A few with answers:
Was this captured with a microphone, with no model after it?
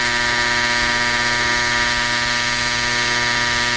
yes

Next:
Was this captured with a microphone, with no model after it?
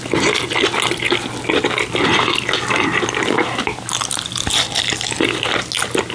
yes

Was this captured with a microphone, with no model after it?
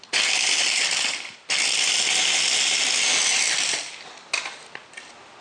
yes